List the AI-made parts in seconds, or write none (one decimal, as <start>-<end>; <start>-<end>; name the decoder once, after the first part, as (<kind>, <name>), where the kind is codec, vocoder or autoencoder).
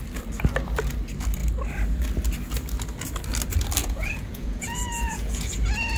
3.8-5.5 (vocoder, Vocos)